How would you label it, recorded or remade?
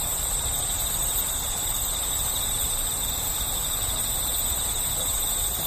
remade